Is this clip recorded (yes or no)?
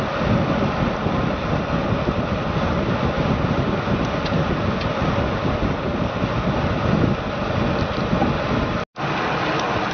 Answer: yes